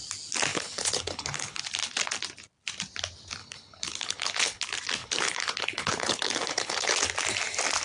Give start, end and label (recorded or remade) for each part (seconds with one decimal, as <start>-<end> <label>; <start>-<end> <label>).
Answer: 0.0-0.5 recorded; 0.5-1.6 remade; 1.6-3.4 recorded; 3.4-4.6 remade; 4.6-5.0 recorded; 5.0-6.9 remade; 6.9-7.8 recorded